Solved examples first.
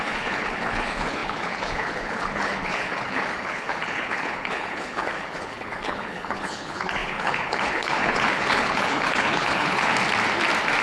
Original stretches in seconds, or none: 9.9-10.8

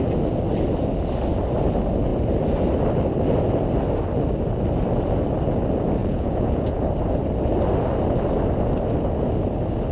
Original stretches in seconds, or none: 0.0-6.0; 6.8-9.9

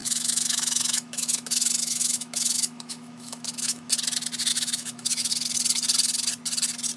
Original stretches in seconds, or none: 3.9-4.5; 5.3-7.0